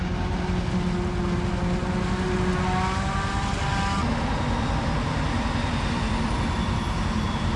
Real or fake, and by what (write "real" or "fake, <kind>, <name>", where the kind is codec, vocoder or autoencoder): real